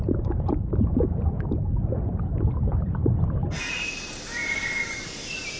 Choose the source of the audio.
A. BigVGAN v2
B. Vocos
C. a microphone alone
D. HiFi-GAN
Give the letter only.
C